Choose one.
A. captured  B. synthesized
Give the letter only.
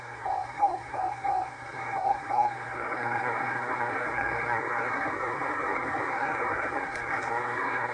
B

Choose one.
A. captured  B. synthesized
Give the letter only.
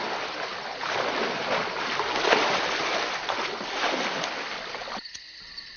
A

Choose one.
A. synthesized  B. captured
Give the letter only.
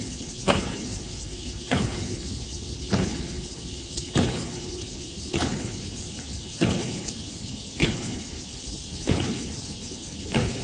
A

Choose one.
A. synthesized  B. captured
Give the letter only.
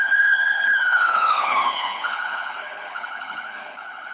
A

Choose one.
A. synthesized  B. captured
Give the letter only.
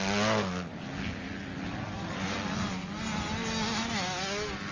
B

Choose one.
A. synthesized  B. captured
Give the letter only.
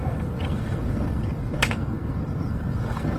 A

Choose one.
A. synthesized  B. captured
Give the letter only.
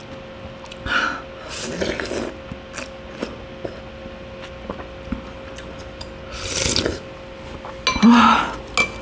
B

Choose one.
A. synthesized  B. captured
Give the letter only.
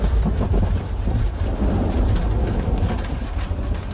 B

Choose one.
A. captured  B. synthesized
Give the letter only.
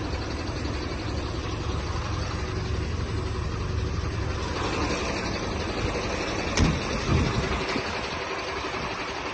A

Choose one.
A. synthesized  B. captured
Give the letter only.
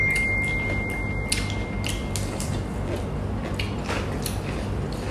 B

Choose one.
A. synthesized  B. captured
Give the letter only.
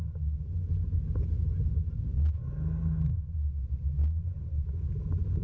B